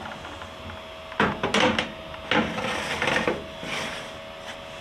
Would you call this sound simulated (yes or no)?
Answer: no